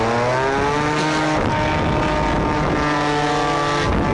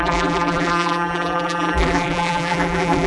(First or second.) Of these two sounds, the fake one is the second